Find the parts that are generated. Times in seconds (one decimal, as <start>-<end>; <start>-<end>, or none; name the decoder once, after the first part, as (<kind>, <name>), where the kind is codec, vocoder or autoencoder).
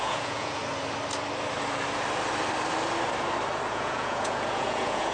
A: 0.0-0.6 (vocoder, Vocos); 3.7-5.1